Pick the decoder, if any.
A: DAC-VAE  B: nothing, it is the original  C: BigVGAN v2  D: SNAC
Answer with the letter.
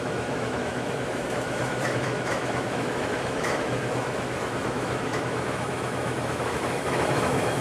A